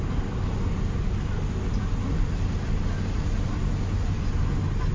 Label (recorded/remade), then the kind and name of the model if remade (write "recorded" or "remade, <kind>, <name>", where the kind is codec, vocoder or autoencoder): recorded